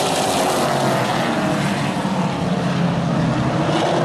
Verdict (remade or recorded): recorded